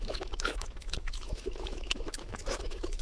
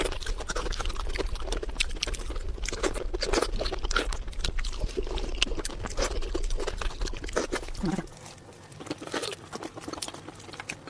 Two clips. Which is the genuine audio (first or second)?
second